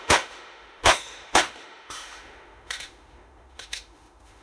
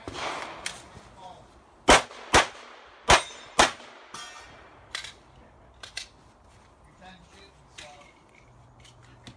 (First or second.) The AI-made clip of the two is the first